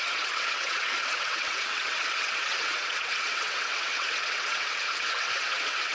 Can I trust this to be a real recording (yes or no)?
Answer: no